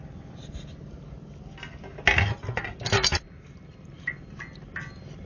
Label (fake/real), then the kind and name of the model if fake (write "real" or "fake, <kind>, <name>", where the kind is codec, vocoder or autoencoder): real